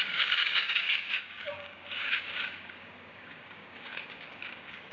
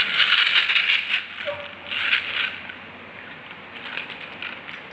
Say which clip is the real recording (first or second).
second